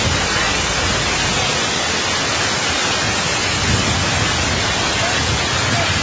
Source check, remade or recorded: recorded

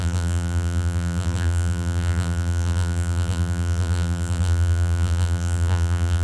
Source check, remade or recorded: remade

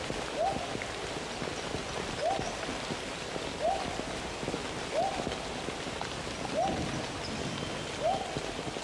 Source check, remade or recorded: recorded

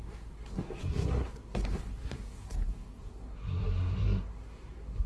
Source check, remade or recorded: remade